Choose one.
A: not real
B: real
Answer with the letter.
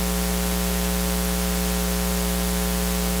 B